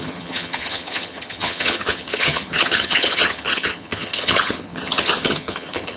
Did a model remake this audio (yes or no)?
yes